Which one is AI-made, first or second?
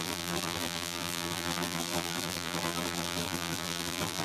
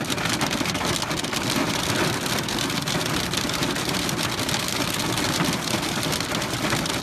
first